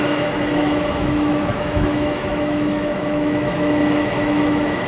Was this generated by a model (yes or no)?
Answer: yes